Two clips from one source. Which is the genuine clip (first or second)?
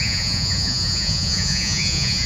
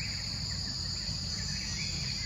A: second